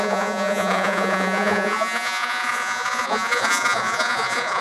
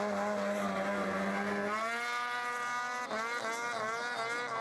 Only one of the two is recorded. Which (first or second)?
second